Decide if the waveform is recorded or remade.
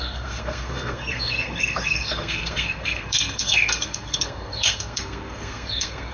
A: remade